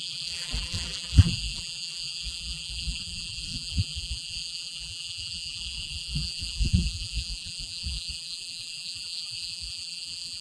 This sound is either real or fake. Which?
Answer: fake